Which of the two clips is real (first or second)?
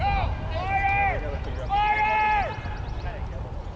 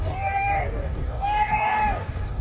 first